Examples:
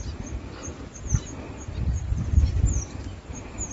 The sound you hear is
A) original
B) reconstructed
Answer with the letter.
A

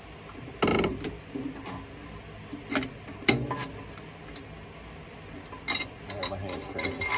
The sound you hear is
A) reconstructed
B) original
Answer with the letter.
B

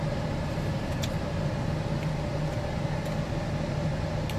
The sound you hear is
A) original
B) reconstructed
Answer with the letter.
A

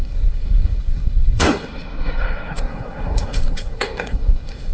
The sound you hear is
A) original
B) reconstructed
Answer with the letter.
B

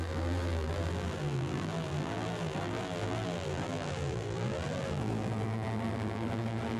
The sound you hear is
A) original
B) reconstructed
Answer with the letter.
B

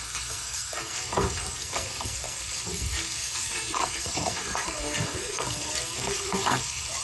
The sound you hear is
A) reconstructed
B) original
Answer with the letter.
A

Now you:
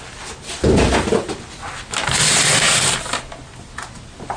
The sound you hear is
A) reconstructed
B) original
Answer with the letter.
B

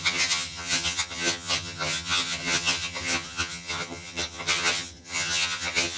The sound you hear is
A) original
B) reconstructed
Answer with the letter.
B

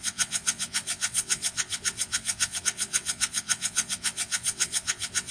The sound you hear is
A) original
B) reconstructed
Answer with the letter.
B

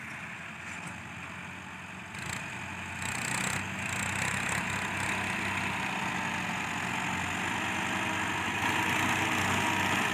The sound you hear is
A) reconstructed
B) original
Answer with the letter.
B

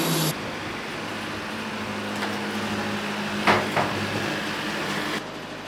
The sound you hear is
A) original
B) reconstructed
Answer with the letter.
A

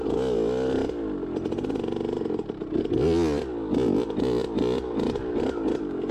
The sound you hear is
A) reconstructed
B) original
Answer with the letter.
B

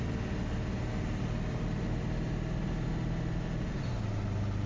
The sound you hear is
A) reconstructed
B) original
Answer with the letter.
B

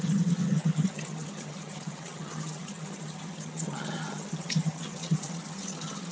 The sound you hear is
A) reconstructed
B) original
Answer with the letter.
A